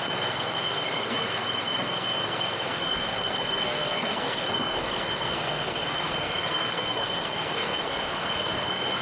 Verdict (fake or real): fake